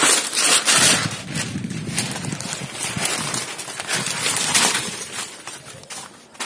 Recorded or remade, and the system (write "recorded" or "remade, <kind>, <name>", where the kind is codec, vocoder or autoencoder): recorded